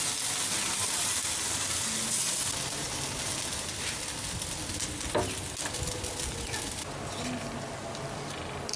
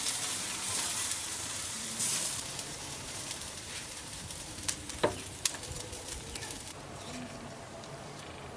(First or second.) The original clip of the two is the first